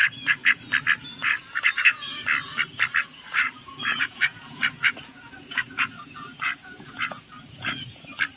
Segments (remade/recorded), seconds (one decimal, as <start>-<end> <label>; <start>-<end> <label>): 0.0-0.6 remade; 0.6-1.1 recorded; 1.1-2.2 remade; 2.2-3.0 recorded; 3.0-8.0 remade; 8.0-8.4 recorded